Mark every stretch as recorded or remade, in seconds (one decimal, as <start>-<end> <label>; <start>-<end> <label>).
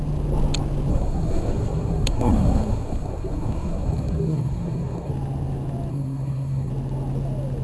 0.0-0.9 recorded; 0.9-5.1 remade; 5.1-5.9 recorded; 5.9-6.7 remade; 6.7-7.6 recorded